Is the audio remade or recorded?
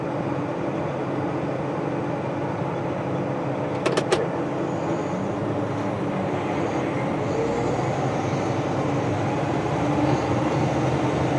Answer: recorded